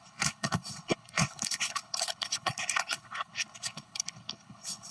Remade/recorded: remade